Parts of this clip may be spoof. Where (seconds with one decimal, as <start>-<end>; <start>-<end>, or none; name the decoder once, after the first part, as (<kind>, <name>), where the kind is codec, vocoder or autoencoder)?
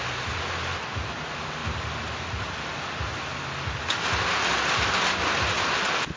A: none